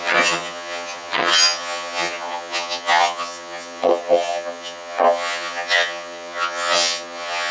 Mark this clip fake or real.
fake